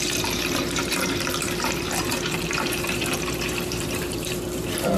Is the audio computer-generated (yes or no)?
yes